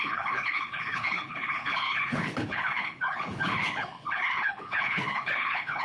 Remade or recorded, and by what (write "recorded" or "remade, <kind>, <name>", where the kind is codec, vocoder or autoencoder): remade, codec, HILCodec